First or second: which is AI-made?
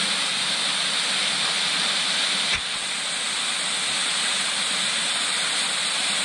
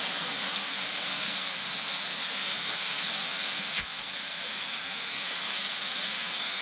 second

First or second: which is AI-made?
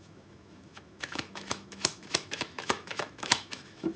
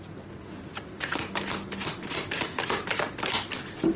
first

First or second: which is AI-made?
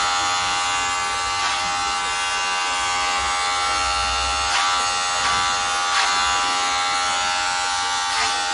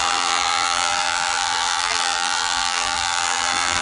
second